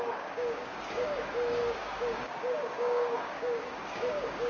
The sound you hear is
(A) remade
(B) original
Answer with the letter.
A